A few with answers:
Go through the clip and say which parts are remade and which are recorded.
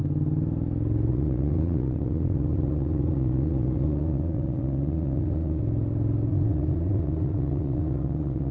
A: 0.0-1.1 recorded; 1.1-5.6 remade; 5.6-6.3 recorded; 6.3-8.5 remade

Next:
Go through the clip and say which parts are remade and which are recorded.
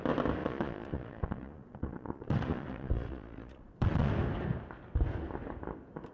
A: 0.0-0.4 recorded; 0.4-4.1 remade; 4.1-6.1 recorded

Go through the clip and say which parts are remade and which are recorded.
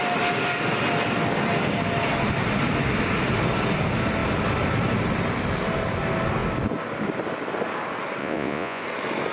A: 0.0-8.2 recorded; 8.2-8.8 remade; 8.8-9.3 recorded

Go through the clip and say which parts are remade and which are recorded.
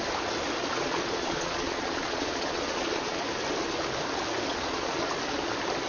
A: 0.0-0.6 recorded; 0.6-3.2 remade; 3.2-4.5 recorded; 4.5-5.1 remade; 5.1-5.9 recorded